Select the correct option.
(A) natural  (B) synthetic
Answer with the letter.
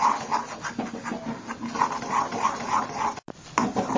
A